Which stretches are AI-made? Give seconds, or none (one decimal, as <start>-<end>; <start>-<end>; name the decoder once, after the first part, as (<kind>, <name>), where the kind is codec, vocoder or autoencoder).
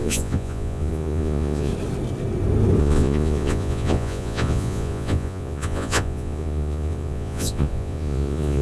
0.0-1.7 (vocoder, Vocos); 2.8-8.6